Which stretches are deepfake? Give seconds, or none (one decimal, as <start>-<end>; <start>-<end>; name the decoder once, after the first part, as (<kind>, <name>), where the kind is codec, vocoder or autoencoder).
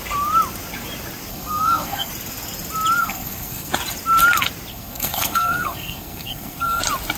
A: 1.3-2.1 (codec, SNAC); 3.0-3.7; 4.7-6.8